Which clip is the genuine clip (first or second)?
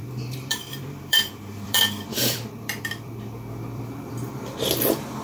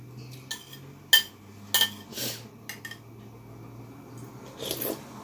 second